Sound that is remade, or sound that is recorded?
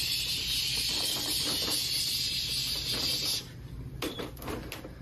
remade